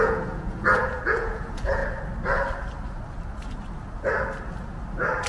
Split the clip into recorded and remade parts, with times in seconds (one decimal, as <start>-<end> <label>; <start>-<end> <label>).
0.0-1.8 remade; 1.8-5.3 recorded